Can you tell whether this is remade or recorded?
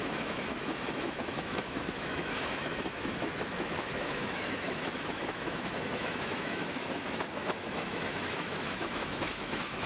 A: remade